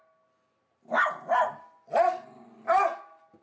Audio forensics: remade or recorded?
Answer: recorded